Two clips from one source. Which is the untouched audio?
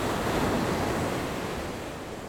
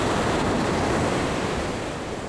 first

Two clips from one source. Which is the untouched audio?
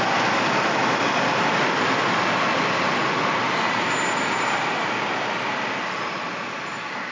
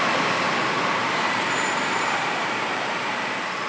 first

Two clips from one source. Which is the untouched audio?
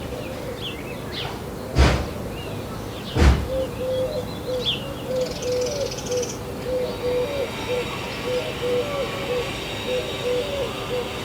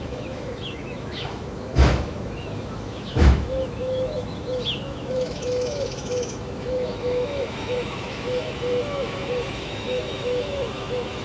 first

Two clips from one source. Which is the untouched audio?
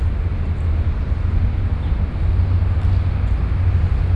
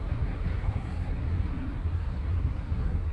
first